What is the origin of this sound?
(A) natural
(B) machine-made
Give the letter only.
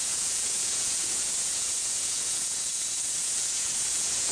B